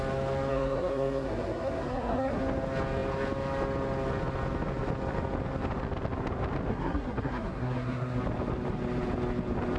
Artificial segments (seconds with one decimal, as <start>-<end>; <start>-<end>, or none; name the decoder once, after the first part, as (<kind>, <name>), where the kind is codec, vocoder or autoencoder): 0.5-2.4 (codec, SNAC); 6.7-8.2

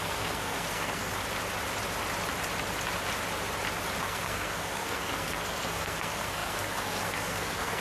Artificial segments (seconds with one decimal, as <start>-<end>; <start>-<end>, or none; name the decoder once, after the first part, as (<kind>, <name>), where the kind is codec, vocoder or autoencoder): 0.0-1.1 (codec, SNAC); 4.0-7.8

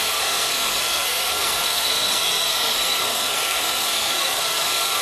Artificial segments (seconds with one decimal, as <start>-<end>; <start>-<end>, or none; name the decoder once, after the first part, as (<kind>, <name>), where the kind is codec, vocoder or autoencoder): 0.0-5.0 (codec, SNAC)

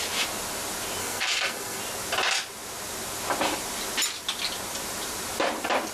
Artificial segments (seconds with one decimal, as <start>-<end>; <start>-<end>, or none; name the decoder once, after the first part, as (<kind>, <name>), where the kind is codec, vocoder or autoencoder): 1.0-1.8 (codec, SNAC)

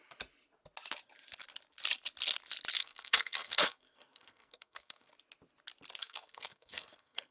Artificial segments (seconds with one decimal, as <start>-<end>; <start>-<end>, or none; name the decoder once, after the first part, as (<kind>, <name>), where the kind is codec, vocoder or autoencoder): 2.8-5.1 (codec, SNAC); 6.0-7.3

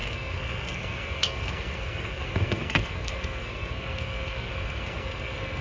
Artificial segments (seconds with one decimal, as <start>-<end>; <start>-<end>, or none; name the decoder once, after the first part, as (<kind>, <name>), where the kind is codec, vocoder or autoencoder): 0.0-5.6 (codec, SNAC)

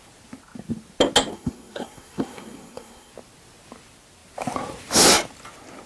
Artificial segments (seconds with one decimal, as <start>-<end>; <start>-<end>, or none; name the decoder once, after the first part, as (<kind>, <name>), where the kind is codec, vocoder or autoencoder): 1.3-3.1 (codec, SNAC)